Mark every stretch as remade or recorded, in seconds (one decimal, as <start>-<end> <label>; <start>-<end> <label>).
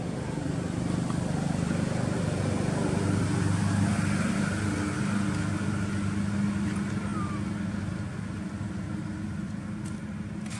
0.0-10.6 recorded